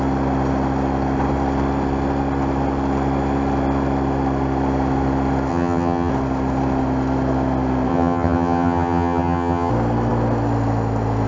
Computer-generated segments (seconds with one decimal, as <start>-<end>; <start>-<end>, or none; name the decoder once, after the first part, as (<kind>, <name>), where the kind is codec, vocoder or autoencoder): 5.5-6.1 (vocoder, HiFi-GAN); 7.9-9.7